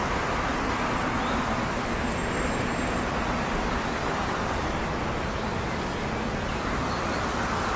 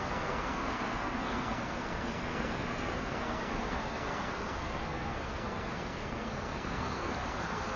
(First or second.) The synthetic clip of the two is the second